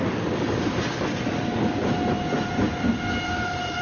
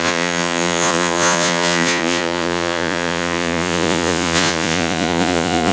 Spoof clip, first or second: second